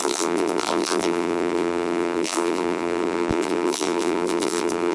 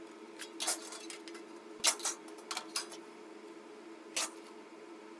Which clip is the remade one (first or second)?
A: first